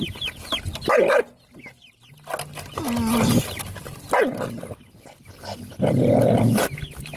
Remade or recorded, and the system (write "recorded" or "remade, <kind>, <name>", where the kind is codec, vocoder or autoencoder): recorded